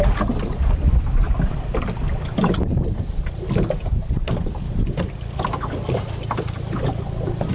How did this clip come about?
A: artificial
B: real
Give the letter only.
B